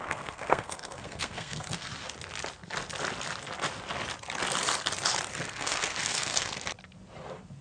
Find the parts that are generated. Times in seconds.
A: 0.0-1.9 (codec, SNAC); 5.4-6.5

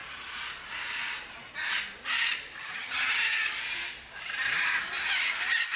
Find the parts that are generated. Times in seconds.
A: 2.6-3.4 (vocoder, HiFi-GAN)

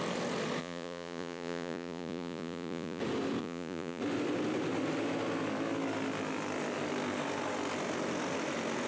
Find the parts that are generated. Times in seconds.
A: 0.6-3.0 (vocoder, Vocos); 3.4-4.0